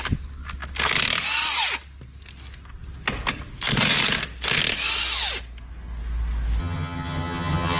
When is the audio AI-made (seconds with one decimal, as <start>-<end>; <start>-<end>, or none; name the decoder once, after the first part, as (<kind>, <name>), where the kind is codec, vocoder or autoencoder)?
6.6-7.8 (vocoder, HiFi-GAN)